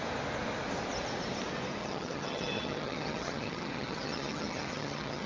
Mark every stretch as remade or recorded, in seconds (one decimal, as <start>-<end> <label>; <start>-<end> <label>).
0.0-1.8 recorded; 1.8-5.3 remade